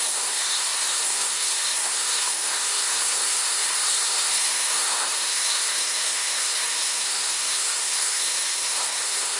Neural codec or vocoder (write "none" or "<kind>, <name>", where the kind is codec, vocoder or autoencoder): codec, SNAC